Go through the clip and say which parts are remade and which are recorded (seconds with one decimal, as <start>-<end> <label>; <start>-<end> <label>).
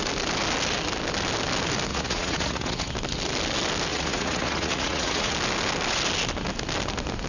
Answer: 0.0-1.9 recorded; 1.9-2.9 remade; 2.9-3.9 recorded; 3.9-5.3 remade; 5.3-7.3 recorded